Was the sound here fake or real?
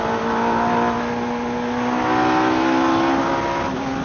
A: real